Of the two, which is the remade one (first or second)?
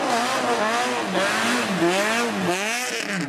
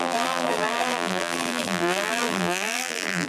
second